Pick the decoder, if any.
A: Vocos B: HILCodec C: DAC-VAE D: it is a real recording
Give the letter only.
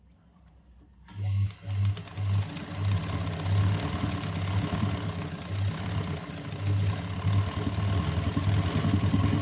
D